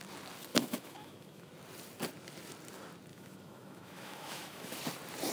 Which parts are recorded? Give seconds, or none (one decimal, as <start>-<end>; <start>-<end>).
0.0-0.5; 1.5-3.1; 4.8-5.3